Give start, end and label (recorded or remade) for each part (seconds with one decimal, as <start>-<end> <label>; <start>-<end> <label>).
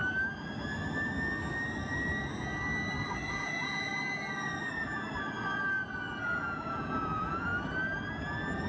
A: 0.0-3.3 recorded; 3.3-3.9 remade; 3.9-6.2 recorded; 6.2-7.5 remade; 7.5-8.7 recorded